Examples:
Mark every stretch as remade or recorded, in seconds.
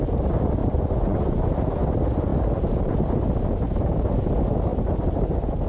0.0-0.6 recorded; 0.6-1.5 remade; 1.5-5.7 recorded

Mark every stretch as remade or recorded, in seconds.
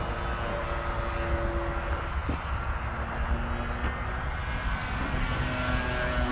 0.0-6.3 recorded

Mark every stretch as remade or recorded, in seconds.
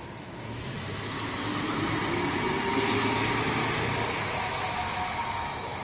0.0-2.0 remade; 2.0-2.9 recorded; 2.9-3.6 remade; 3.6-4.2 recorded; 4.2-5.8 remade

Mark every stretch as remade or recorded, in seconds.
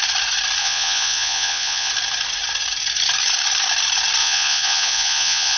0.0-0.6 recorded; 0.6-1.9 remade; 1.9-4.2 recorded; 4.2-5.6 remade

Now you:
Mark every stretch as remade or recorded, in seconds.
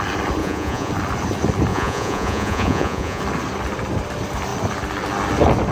0.0-0.4 recorded; 0.4-0.9 remade; 0.9-1.7 recorded; 1.7-3.2 remade; 3.2-5.7 recorded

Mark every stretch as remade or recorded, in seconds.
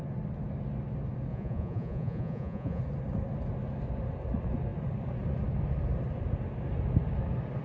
0.0-1.3 recorded; 1.3-2.8 remade; 2.8-7.6 recorded